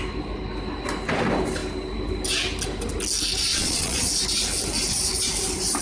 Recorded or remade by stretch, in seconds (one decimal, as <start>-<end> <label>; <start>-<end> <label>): 0.0-3.5 recorded; 3.5-4.1 remade; 4.1-5.8 recorded